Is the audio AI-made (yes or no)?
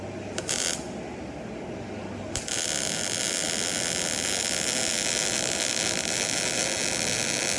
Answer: no